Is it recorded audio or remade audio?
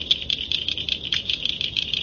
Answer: remade